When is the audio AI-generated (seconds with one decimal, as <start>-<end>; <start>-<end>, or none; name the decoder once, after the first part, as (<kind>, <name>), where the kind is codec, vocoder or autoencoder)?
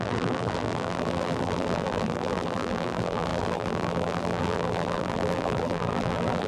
0.0-6.5 (vocoder, BigVGAN v2)